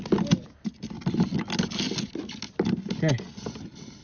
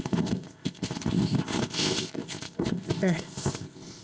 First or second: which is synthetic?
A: second